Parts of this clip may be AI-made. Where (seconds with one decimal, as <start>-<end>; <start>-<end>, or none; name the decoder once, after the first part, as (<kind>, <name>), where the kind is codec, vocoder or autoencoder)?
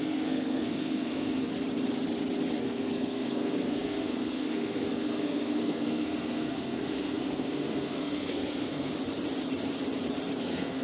0.0-1.5 (codec, SNAC); 2.6-8.9; 10.4-10.8